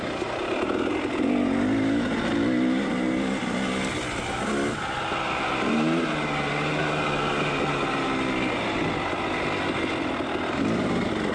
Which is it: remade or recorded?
recorded